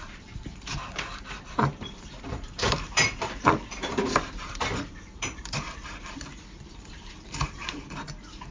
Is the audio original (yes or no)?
no